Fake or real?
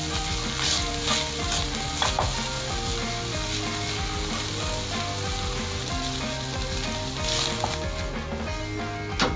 real